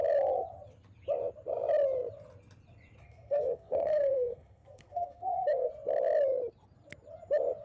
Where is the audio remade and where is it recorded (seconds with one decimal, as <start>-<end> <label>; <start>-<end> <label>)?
0.0-3.0 recorded; 3.0-5.7 remade; 5.7-7.6 recorded